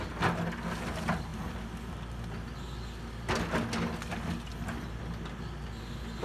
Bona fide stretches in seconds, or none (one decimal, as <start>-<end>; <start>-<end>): 0.0-6.2